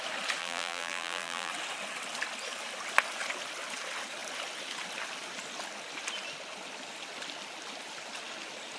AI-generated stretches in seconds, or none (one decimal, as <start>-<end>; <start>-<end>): 0.4-1.5